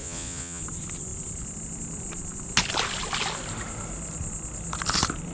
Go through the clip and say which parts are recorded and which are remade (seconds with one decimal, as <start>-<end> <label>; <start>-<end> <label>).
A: 0.0-0.6 remade; 0.6-5.3 recorded